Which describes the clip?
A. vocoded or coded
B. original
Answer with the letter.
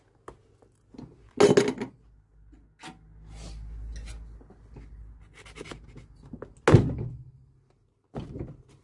B